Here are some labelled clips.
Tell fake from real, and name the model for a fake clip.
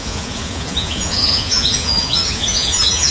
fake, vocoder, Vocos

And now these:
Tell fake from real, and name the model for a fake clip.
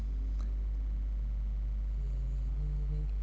real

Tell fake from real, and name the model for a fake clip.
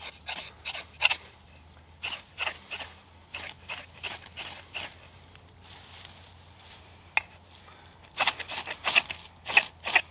real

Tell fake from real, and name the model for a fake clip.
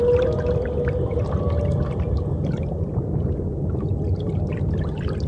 real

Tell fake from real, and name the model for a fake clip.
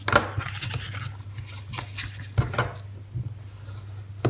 real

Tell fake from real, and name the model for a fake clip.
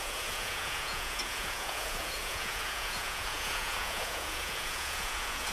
fake, vocoder, Vocos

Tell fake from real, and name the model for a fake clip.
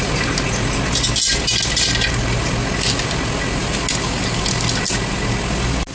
real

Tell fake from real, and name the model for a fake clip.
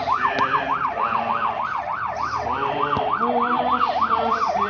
real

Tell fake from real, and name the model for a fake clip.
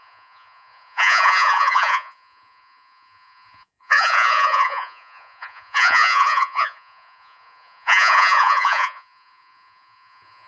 fake, vocoder, Vocos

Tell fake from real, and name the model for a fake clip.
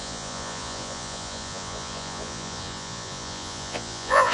fake, vocoder, Vocos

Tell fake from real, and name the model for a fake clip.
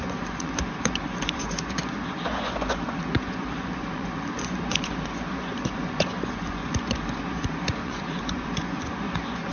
fake, vocoder, Vocos